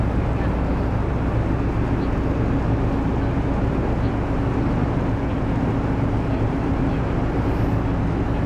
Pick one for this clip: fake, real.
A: real